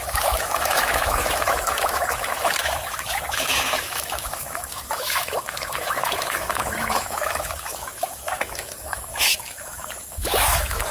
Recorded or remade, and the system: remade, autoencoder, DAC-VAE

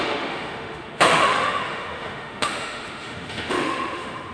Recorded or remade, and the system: remade, autoencoder, DAC-VAE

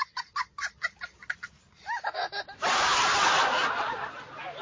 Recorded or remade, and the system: recorded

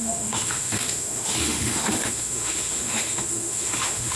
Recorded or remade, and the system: remade, autoencoder, DAC-VAE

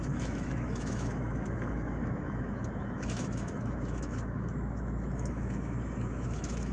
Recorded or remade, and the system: remade, autoencoder, DAC-VAE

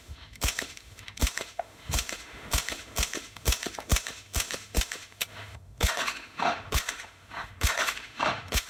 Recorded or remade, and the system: remade, autoencoder, DAC-VAE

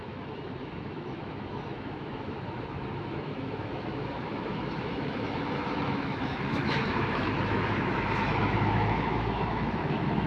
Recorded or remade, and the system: remade, autoencoder, DAC-VAE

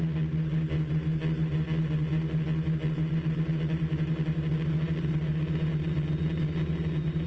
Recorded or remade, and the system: recorded